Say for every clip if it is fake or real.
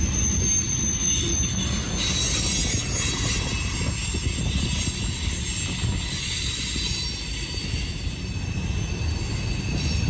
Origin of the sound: real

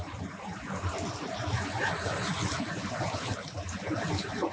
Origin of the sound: real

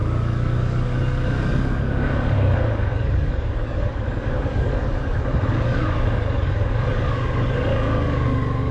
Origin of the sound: fake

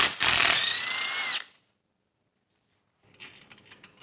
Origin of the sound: real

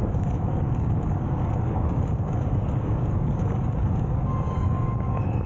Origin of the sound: fake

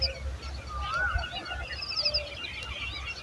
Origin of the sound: real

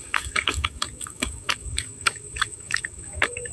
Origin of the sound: fake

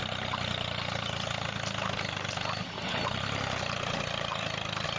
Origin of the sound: real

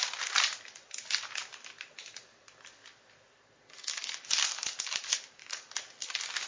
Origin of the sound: real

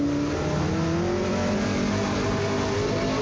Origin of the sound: real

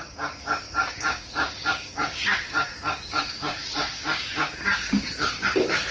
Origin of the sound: fake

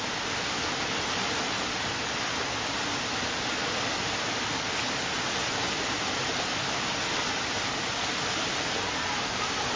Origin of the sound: real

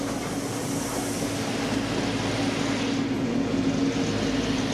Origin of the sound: real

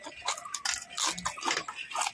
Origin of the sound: real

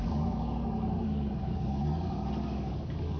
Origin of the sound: fake